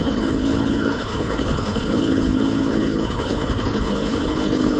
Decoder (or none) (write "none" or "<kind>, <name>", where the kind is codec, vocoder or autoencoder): codec, HILCodec